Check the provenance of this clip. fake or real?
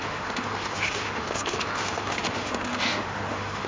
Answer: fake